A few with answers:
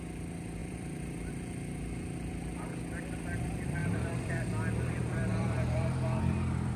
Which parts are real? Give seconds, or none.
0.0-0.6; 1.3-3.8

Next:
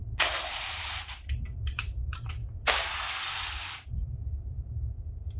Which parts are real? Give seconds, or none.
0.0-0.6; 2.4-4.0

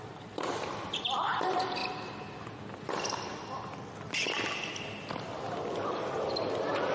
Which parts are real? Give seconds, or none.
1.8-5.9

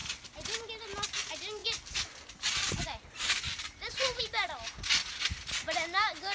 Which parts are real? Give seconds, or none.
0.0-1.6; 4.2-6.3

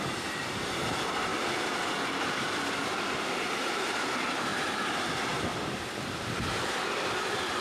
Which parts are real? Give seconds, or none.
none

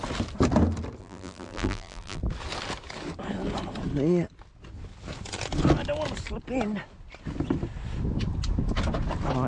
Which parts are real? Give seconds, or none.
0.0-1.0; 2.2-9.5

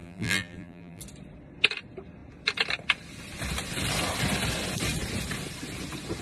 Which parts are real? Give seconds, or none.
1.0-6.2

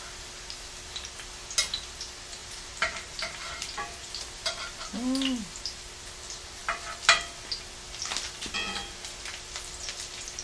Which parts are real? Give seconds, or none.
0.0-2.4; 4.1-10.4